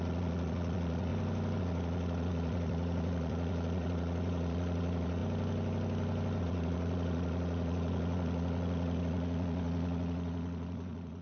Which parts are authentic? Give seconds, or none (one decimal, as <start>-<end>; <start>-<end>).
1.1-1.6; 5.2-6.4